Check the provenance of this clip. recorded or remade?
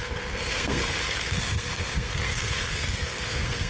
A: remade